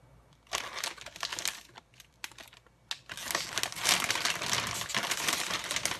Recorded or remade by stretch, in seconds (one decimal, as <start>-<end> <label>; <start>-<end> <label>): 0.0-1.3 recorded; 1.3-2.3 remade; 2.3-6.0 recorded